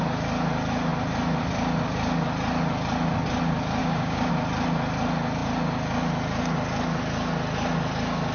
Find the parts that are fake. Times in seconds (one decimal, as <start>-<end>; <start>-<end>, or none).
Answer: 3.8-4.3